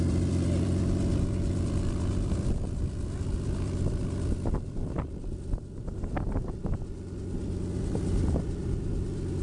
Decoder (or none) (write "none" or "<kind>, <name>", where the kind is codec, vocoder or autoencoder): vocoder, BigVGAN v2